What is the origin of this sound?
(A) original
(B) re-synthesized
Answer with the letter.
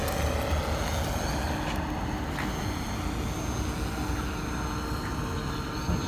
A